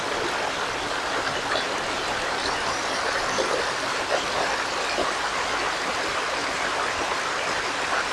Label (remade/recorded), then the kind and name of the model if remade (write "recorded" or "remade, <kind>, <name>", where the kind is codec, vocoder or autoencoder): recorded